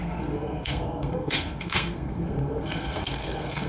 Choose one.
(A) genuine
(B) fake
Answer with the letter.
B